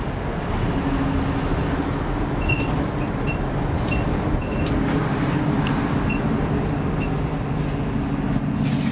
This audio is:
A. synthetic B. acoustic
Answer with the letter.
B